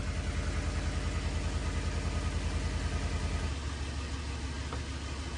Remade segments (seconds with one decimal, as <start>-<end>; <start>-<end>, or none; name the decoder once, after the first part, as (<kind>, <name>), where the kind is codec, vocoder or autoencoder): none